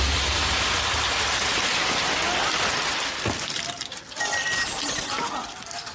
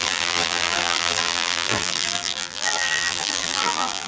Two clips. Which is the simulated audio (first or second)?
second